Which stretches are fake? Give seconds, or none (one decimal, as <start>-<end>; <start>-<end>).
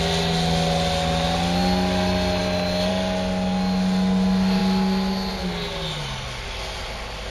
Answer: none